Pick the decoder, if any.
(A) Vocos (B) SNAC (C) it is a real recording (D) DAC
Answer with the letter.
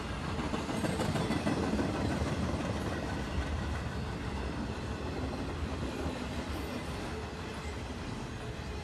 C